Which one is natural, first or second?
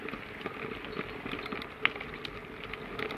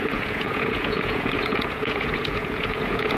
first